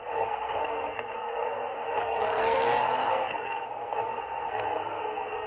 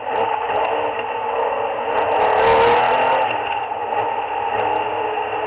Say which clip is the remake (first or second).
first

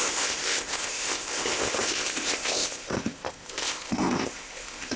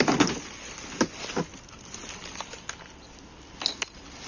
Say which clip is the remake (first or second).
first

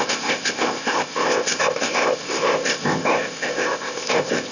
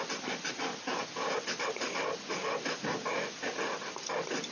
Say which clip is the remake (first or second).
first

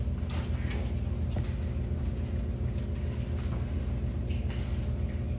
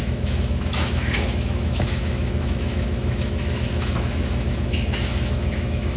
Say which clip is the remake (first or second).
second